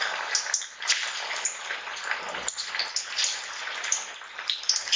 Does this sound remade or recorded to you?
recorded